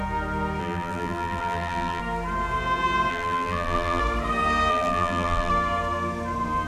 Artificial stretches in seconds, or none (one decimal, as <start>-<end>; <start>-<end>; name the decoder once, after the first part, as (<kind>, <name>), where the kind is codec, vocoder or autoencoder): 0.6-2.0 (vocoder, BigVGAN v2); 3.1-4.0; 4.7-5.5